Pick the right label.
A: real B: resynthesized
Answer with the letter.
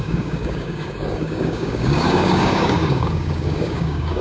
B